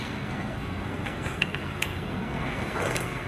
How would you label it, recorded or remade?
remade